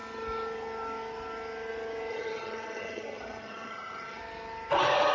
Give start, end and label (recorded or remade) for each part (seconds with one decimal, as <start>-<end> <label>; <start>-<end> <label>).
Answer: 0.0-2.1 recorded; 2.1-4.2 remade; 4.2-5.1 recorded